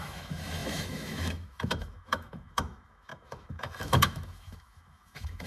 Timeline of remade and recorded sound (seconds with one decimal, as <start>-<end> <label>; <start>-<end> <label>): 0.0-5.5 remade